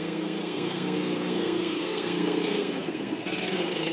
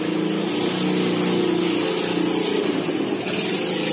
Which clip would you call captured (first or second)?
second